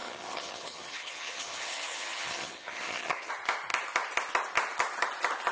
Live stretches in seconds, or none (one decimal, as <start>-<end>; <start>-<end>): 3.3-5.5